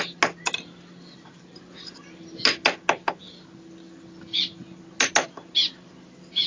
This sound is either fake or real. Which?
real